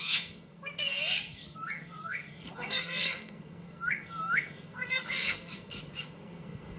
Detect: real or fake fake